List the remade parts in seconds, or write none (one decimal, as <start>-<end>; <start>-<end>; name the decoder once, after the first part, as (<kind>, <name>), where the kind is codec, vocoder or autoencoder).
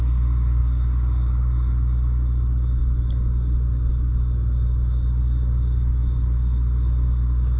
none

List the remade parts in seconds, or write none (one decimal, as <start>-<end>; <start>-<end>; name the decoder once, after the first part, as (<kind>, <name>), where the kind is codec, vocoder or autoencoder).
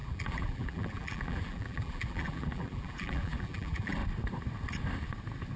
0.0-4.0 (vocoder, BigVGAN v2)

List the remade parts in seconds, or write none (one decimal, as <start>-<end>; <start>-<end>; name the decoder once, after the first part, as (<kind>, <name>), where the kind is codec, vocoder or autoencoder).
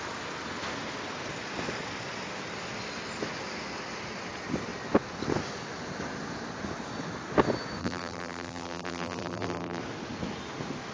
7.8-9.8 (vocoder, BigVGAN v2)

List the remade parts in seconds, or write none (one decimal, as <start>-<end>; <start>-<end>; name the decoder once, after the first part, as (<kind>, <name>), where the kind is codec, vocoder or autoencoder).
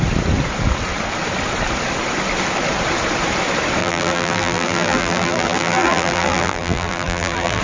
3.8-7.6 (vocoder, BigVGAN v2)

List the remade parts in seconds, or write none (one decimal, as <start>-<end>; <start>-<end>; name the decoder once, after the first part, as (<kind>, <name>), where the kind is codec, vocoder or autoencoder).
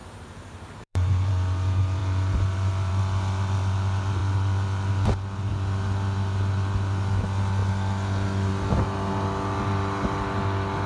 0.0-1.3 (vocoder, BigVGAN v2)